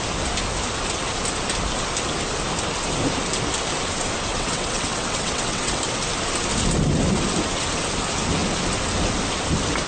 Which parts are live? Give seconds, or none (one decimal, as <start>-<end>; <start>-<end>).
0.0-4.3; 5.8-9.9